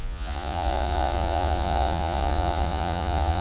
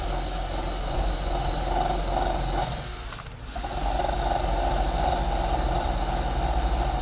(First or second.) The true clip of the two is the second